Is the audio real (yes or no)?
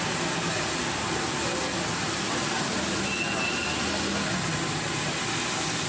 yes